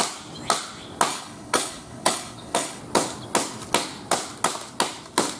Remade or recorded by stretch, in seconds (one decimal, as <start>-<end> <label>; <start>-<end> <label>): 0.0-1.1 recorded; 1.1-2.8 remade; 2.8-5.4 recorded